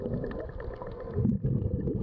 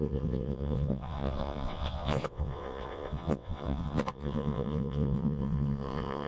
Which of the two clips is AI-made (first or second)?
second